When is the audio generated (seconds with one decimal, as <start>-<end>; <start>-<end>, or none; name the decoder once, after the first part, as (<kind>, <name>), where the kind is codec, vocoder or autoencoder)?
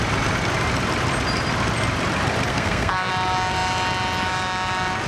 2.5-3.1 (codec, SNAC)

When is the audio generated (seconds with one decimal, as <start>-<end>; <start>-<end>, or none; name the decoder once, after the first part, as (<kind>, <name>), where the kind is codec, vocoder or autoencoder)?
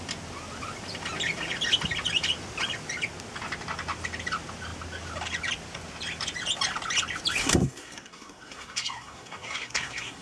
7.4-10.2 (codec, SNAC)